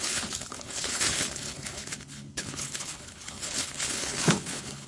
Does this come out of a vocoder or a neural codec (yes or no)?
yes